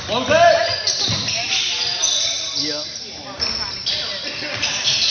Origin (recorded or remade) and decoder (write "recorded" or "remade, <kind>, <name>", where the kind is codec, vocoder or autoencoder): recorded